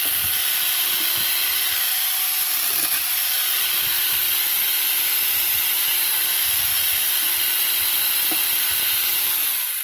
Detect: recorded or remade recorded